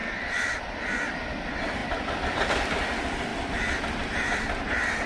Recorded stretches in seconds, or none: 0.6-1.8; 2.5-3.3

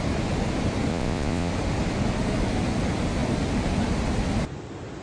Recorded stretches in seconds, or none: 0.0-0.9; 1.5-5.0